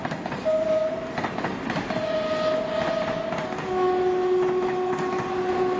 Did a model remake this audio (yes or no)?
no